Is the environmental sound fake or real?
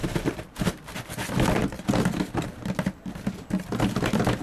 real